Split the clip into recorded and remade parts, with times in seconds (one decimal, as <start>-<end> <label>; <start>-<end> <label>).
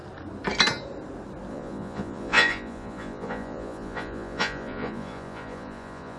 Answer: 0.0-1.5 recorded; 1.5-6.2 remade